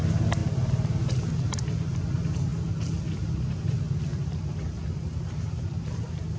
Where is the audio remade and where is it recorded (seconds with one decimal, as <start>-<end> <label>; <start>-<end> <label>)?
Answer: 0.0-4.1 recorded; 4.1-6.4 remade